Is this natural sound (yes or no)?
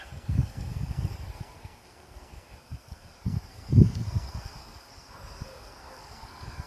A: no